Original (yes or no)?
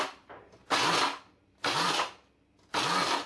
yes